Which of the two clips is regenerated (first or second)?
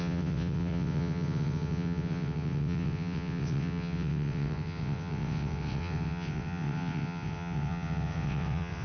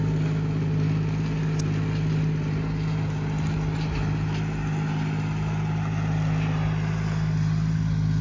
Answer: first